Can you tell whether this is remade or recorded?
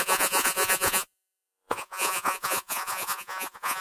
remade